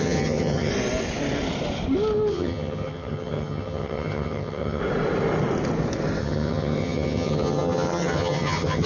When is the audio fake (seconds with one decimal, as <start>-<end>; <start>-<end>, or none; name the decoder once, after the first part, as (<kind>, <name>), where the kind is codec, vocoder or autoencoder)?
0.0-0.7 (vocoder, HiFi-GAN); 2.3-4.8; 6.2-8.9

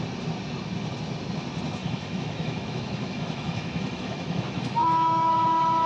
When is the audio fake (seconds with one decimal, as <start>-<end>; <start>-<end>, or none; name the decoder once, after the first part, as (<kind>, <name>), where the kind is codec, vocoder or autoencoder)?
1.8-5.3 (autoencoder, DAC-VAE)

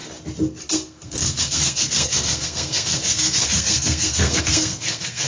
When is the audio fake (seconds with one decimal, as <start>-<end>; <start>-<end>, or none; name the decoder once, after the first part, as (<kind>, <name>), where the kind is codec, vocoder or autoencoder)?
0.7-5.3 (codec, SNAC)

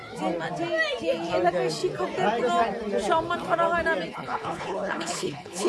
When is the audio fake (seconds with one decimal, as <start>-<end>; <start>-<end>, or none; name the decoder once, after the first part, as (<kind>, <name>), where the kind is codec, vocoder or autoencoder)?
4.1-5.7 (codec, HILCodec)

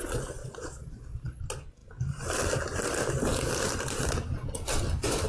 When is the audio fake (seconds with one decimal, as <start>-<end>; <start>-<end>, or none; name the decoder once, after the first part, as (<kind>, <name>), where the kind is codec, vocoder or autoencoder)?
0.4-1.4 (vocoder, Vocos)

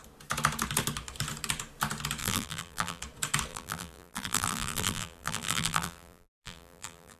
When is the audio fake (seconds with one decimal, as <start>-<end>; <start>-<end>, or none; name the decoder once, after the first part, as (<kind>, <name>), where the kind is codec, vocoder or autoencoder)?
2.2-3.0 (vocoder, BigVGAN v2); 3.5-7.2

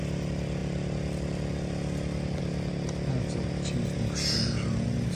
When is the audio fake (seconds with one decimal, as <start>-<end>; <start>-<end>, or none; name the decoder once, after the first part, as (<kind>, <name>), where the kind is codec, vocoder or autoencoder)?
none